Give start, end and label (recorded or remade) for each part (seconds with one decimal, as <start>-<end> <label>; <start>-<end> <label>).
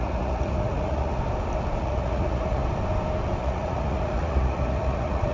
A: 0.0-1.2 remade; 1.2-1.8 recorded; 1.8-2.6 remade; 2.6-3.4 recorded; 3.4-5.3 remade